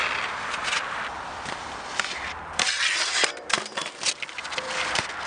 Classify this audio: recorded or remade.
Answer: recorded